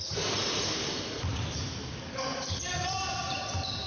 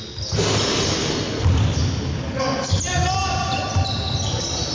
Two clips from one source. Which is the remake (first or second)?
first